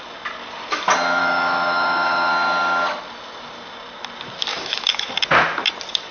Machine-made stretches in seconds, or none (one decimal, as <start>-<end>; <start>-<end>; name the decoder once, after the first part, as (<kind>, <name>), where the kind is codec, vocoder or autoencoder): 1.2-2.3 (autoencoder, DAC-VAE); 4.5-5.1